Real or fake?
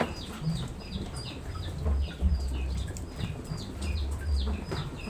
real